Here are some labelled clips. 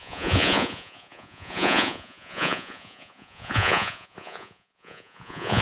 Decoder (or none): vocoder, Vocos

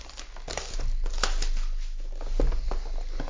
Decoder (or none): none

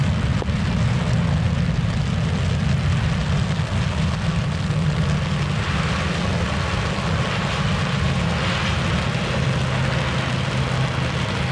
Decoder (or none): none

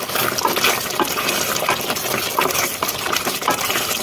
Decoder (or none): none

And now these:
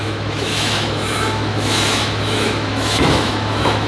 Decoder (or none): autoencoder, DAC-VAE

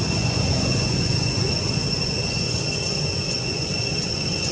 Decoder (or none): vocoder, Vocos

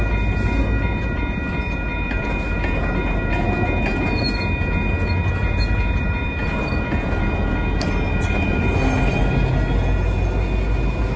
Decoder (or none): none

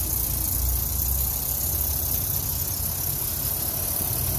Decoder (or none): none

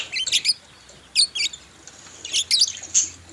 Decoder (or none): none